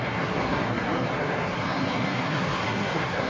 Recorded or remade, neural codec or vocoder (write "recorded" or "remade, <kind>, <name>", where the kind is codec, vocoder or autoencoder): remade, codec, SNAC